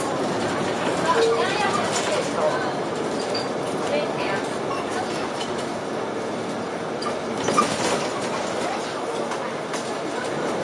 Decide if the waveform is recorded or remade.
recorded